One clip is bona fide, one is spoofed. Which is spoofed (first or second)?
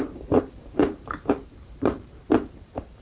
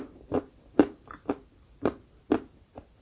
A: first